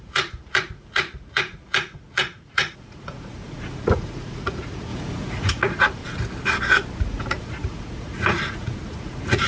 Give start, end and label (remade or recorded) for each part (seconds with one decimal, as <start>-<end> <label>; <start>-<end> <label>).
0.0-6.0 remade; 6.0-7.0 recorded; 7.0-9.5 remade